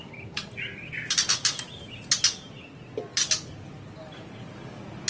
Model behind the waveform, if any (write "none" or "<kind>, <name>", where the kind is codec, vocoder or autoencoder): none